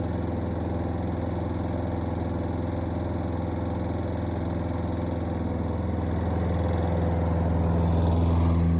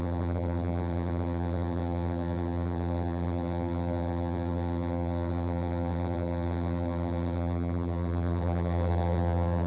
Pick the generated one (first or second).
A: second